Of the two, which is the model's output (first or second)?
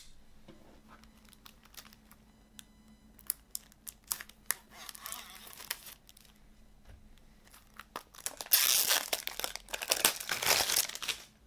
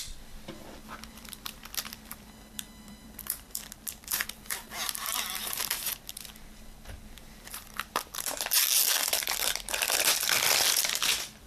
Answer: second